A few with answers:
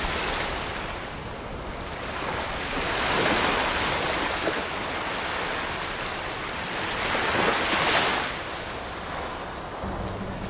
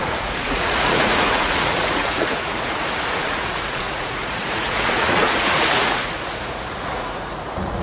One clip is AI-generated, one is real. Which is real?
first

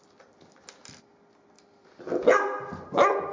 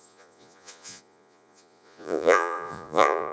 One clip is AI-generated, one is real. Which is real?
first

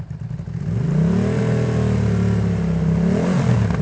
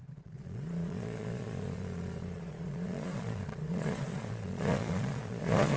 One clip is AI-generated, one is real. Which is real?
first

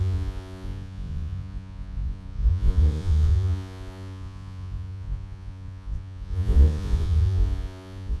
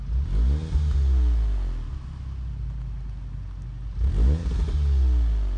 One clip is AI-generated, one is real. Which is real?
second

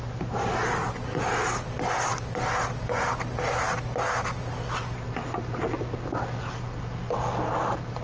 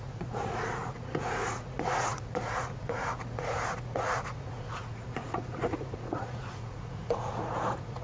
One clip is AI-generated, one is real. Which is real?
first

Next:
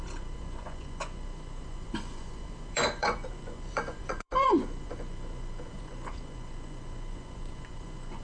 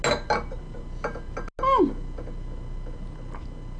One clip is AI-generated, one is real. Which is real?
second